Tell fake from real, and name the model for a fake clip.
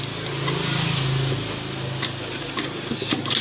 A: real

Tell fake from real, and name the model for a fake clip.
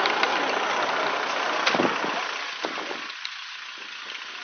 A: real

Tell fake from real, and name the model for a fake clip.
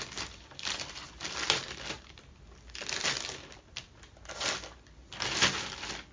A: real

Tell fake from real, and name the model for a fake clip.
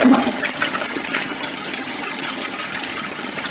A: fake, vocoder, HiFi-GAN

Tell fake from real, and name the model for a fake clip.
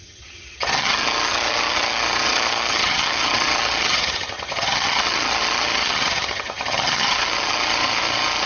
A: fake, vocoder, HiFi-GAN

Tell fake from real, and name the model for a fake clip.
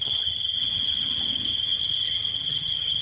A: fake, vocoder, HiFi-GAN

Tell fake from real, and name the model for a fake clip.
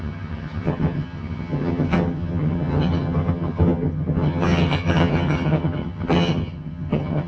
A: fake, vocoder, HiFi-GAN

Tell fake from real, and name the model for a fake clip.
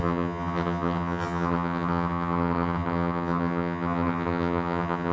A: fake, vocoder, HiFi-GAN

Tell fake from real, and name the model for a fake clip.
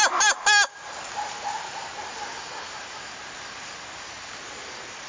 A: real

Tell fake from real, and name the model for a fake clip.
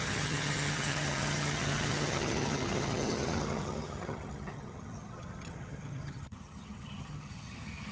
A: fake, vocoder, HiFi-GAN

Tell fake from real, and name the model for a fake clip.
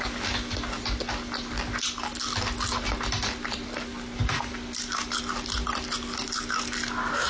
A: real